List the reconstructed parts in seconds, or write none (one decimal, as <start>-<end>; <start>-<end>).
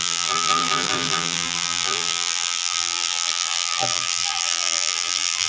0.0-5.5